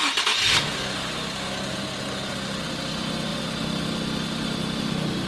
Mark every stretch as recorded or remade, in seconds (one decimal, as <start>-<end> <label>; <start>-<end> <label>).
0.0-5.3 recorded